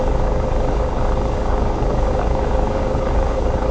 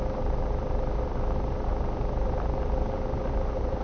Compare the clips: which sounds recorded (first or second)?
second